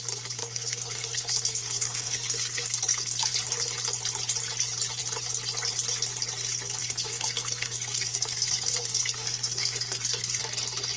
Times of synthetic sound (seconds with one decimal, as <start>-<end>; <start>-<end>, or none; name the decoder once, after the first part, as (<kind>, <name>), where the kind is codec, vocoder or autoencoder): 0.4-3.3 (codec, SNAC); 6.8-10.4